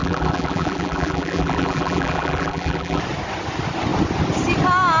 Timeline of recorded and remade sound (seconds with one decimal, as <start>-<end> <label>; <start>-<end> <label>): 0.0-3.0 remade; 3.0-5.0 recorded

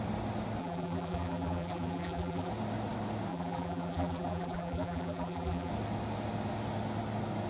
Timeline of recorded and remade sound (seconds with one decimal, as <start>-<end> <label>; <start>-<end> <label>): 0.0-0.6 recorded; 0.6-2.5 remade; 2.5-3.3 recorded; 3.3-5.7 remade; 5.7-7.5 recorded